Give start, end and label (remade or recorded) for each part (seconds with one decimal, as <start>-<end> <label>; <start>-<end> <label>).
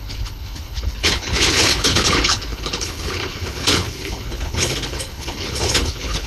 0.0-6.3 remade